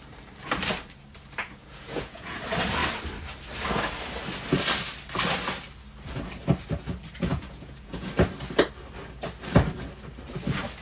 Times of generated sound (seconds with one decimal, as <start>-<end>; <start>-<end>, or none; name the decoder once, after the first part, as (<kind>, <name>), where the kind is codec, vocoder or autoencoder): 1.4-2.4 (vocoder, Vocos); 7.3-8.1